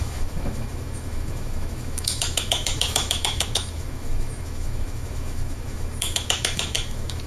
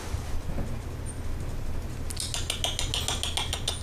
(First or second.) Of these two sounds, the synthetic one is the first